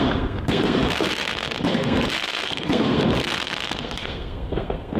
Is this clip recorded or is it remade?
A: remade